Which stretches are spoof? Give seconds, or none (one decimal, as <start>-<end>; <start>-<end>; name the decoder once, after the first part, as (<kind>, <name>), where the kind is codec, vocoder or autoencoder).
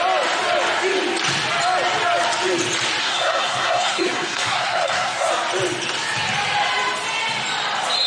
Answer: 3.0-5.3 (codec, SNAC)